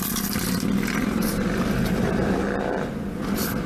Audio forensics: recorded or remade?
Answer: remade